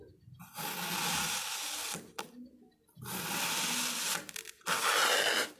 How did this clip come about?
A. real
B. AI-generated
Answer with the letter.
A